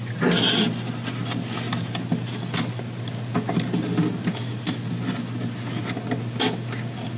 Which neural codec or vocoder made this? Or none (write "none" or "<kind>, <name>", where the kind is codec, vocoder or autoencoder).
none